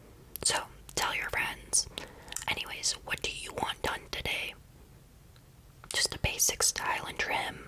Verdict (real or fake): real